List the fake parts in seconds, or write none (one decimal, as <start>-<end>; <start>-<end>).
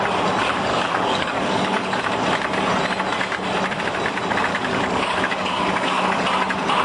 0.7-2.0; 4.5-6.2